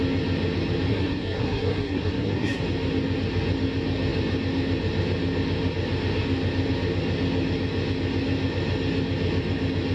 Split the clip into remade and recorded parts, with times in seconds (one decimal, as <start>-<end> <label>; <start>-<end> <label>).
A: 0.0-0.9 recorded; 0.9-2.6 remade; 2.6-9.9 recorded